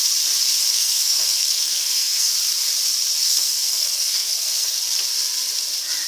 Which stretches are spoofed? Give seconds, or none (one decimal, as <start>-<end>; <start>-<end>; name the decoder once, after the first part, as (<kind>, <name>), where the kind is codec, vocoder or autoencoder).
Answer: 0.7-2.3 (codec, SNAC); 3.2-4.8